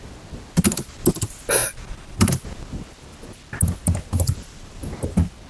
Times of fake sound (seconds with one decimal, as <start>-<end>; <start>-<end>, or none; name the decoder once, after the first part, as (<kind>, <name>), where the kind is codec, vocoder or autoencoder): 1.6-2.2 (vocoder, BigVGAN v2)